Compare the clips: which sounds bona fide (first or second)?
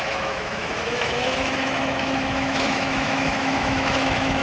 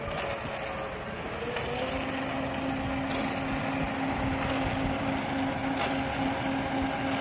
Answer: second